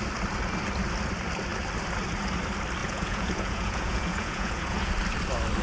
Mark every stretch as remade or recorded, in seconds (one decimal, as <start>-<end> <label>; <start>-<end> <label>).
0.0-2.8 recorded; 2.8-4.9 remade; 4.9-5.6 recorded